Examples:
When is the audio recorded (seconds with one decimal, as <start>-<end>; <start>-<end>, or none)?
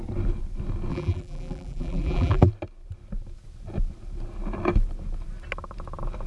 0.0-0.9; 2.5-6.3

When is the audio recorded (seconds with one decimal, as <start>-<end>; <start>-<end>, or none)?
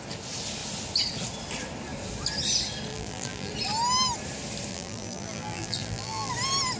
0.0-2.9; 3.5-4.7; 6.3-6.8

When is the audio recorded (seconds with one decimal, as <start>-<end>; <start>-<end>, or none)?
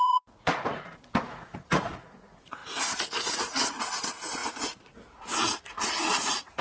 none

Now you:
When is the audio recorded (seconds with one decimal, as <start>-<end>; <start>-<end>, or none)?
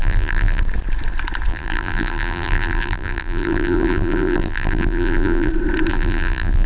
0.6-1.5; 5.5-5.9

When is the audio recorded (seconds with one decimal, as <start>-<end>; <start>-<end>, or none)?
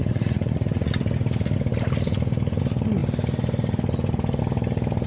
0.9-5.1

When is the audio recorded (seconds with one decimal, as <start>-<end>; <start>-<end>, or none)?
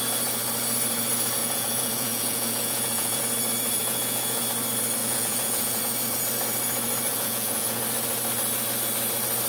0.0-1.4; 3.2-3.8; 4.4-5.0; 5.8-7.1; 7.8-9.5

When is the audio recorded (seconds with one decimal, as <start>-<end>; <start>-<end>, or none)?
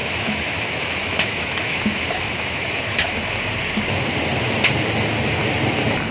3.3-6.1